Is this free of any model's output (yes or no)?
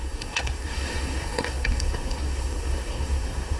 no